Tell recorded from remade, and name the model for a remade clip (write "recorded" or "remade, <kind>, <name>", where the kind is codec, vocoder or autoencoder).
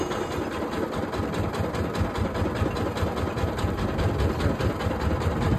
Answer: recorded